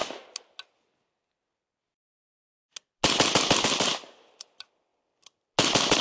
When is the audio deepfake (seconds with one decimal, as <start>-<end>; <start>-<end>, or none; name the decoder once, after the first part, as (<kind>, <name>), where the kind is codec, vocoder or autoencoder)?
3.6-4.9 (vocoder, BigVGAN v2)